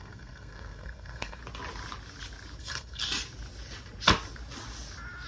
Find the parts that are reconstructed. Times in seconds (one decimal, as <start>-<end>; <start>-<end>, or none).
0.0-1.4; 2.6-3.0